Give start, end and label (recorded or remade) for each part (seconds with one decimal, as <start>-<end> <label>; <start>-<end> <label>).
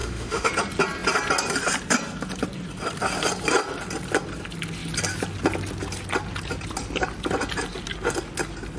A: 0.0-0.5 remade; 0.5-8.8 recorded